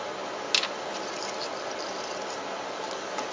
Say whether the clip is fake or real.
real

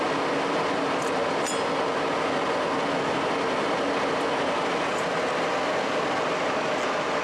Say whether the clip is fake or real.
real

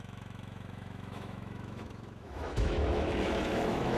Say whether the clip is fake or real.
fake